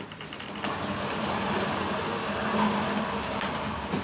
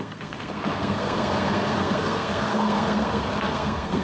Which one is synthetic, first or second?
second